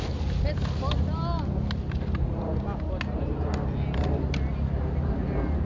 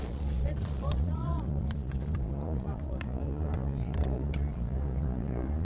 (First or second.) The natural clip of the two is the first